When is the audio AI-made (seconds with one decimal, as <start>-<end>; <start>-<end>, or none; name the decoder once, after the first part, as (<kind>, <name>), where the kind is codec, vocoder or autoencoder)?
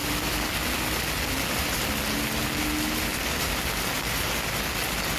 3.1-3.7 (vocoder, BigVGAN v2)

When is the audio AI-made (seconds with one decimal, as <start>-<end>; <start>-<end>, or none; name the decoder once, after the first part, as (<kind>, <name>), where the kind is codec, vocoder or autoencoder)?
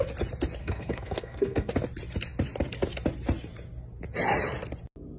0.6-1.7 (codec, SNAC)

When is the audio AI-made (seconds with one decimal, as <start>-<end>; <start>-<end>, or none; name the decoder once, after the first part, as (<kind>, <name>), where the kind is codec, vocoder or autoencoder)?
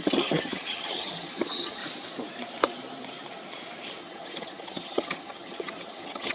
0.0-1.8 (vocoder, HiFi-GAN); 4.0-6.3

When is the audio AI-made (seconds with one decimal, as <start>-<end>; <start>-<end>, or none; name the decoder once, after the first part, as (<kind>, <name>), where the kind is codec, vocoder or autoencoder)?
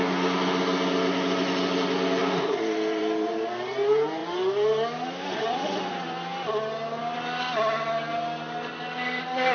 none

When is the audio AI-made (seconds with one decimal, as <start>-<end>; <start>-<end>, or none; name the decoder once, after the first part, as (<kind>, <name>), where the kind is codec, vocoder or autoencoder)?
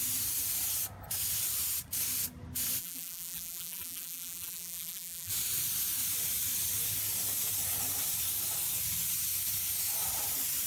2.8-5.3 (vocoder, BigVGAN v2)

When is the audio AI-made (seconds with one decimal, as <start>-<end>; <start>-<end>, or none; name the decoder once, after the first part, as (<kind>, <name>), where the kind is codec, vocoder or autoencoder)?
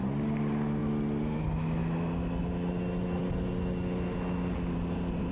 none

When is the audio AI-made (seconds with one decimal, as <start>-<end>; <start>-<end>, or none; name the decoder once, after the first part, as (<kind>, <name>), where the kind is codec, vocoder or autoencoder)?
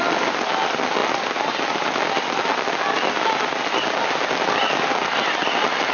none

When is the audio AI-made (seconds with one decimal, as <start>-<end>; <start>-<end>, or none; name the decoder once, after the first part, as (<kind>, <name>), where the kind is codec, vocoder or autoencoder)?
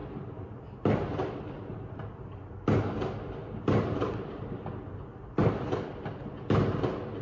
0.0-4.3 (vocoder, BigVGAN v2); 5.4-6.3